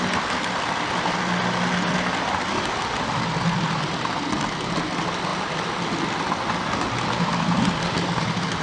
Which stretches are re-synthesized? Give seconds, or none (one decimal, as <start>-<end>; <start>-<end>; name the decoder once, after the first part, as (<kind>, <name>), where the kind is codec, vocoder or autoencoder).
none